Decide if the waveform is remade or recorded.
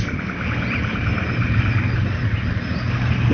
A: recorded